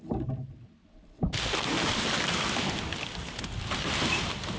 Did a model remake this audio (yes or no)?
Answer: no